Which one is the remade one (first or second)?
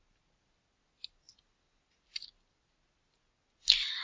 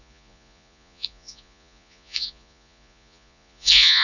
second